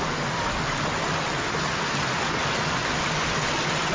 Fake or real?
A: real